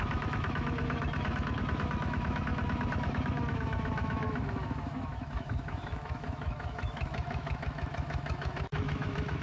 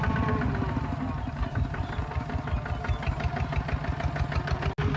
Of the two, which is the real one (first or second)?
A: second